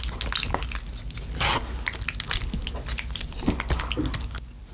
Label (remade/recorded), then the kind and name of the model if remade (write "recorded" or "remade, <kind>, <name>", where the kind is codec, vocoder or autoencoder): recorded